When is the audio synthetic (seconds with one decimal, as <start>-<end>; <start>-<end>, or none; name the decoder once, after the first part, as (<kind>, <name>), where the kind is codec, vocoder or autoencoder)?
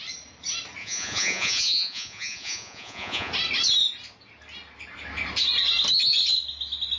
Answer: 0.8-3.3 (vocoder, Vocos)